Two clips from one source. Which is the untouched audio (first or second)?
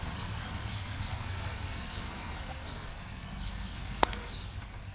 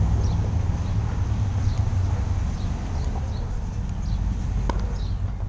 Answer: second